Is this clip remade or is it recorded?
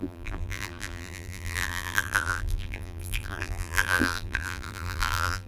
remade